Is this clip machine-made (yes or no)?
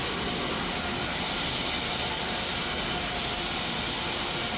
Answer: no